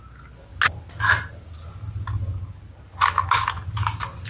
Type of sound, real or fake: real